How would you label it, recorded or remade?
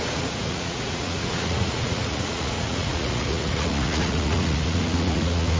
remade